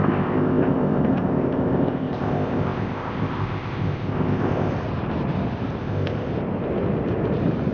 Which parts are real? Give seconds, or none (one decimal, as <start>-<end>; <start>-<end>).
4.7-5.8; 6.3-7.7